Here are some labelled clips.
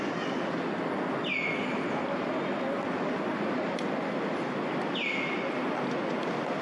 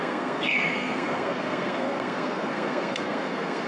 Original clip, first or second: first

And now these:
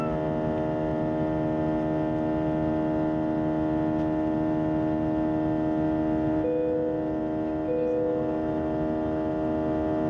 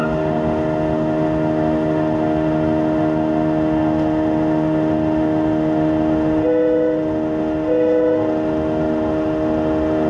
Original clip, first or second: first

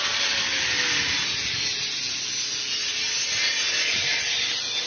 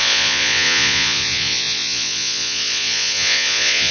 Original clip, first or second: first